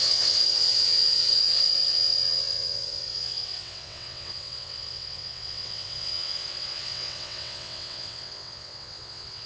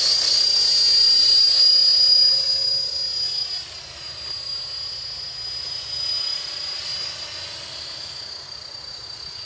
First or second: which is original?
second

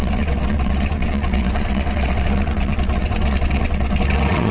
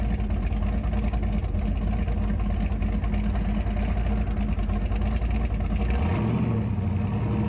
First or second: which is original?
second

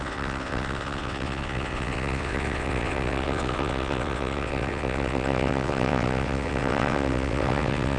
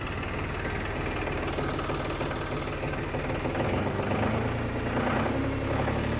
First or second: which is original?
second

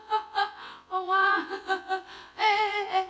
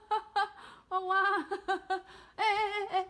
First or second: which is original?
second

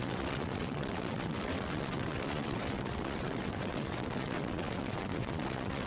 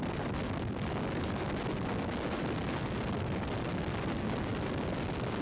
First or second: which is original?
second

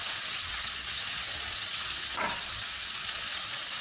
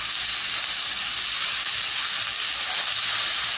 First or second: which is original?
second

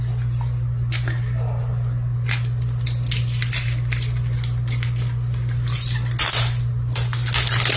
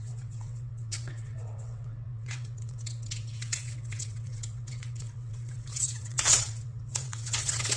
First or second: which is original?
first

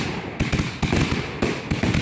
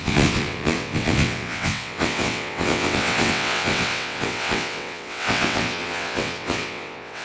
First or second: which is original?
first